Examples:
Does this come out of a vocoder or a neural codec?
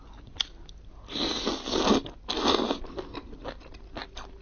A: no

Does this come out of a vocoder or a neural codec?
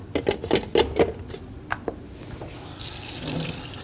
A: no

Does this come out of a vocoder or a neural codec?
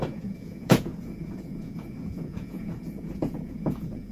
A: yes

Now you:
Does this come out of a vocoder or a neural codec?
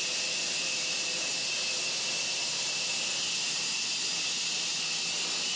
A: no